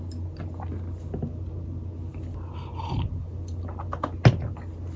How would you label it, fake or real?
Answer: real